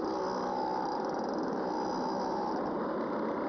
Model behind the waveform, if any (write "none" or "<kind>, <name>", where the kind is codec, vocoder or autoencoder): none